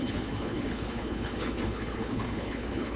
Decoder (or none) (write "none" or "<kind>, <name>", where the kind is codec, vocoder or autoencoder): codec, HILCodec